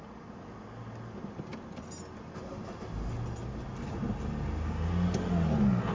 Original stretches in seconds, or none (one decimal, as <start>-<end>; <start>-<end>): 0.0-5.9